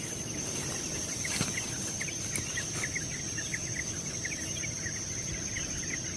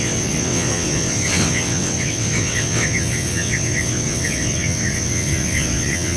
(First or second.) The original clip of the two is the first